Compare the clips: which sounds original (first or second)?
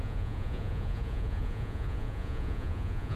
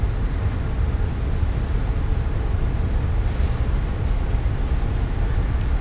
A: second